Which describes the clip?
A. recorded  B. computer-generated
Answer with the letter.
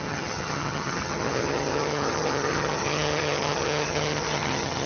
B